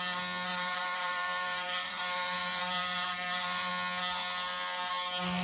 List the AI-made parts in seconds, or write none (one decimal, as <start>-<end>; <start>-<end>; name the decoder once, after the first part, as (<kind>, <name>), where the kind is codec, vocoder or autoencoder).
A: 0.5-3.7 (vocoder, BigVGAN v2)